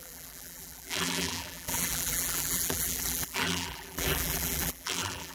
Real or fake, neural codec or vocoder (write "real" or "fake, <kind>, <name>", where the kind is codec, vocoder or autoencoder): fake, vocoder, BigVGAN v2